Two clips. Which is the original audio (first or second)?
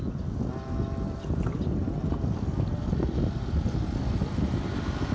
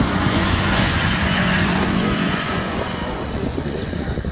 first